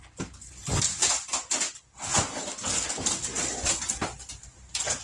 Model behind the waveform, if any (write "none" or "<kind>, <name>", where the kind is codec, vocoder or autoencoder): none